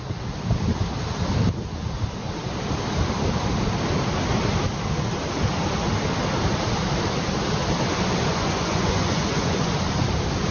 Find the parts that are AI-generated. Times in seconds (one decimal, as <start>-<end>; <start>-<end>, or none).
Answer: 8.3-9.7